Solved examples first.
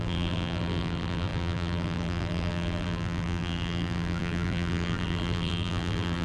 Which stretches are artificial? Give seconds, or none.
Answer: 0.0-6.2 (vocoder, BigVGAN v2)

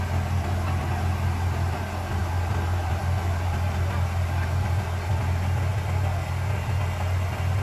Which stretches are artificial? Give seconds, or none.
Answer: none

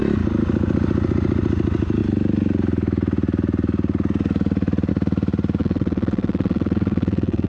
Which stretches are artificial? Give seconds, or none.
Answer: 5.6-7.5 (vocoder, WaveNeXt)